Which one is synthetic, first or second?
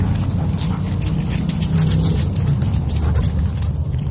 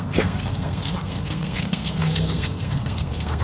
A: second